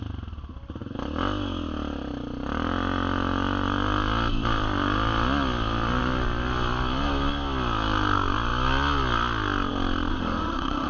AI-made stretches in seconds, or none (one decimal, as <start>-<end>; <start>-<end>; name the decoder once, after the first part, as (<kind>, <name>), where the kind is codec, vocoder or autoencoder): 10.1-10.9 (autoencoder, DAC-VAE)